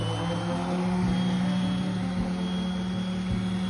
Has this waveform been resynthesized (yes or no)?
no